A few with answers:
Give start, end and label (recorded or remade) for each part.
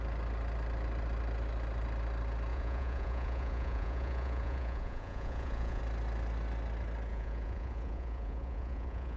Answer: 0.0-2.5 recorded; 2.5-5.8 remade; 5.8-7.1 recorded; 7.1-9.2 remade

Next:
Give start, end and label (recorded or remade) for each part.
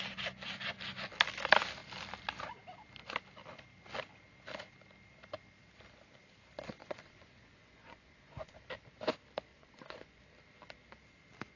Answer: 0.0-6.8 recorded; 6.8-8.6 remade; 8.6-9.5 recorded; 9.5-10.2 remade; 10.2-11.6 recorded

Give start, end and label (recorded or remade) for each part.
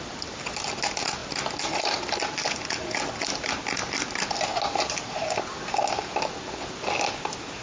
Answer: 0.0-7.6 recorded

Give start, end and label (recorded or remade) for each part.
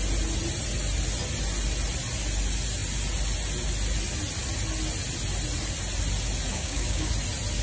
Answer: 0.0-6.5 recorded; 6.5-7.1 remade; 7.1-7.6 recorded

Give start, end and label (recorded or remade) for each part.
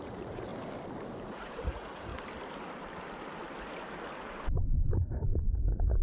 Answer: 0.0-0.5 remade; 0.5-1.2 recorded; 1.2-2.1 remade; 2.1-5.5 recorded; 5.5-6.0 remade